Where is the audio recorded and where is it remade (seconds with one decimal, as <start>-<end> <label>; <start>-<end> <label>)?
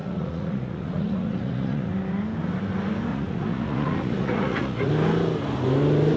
0.0-1.9 remade; 1.9-3.1 recorded; 3.1-4.9 remade; 4.9-6.2 recorded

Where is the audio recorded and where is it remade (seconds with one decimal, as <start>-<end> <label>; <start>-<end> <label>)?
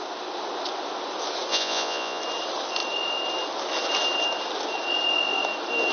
0.0-1.5 recorded; 1.5-2.2 remade; 2.2-5.9 recorded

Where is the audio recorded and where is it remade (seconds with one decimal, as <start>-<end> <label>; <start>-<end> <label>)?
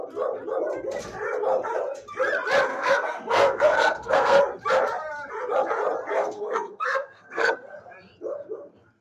0.0-2.7 recorded; 2.7-4.4 remade; 4.4-6.2 recorded; 6.2-7.5 remade; 7.5-9.0 recorded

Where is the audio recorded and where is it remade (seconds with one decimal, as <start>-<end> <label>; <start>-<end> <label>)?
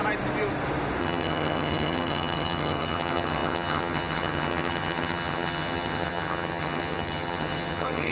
0.0-1.0 recorded; 1.0-8.1 remade